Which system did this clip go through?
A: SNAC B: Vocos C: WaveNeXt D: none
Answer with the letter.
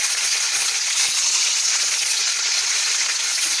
B